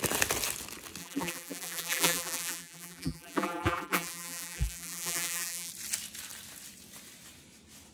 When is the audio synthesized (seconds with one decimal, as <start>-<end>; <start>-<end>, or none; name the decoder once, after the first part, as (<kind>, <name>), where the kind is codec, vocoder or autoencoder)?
1.0-5.7 (vocoder, BigVGAN v2)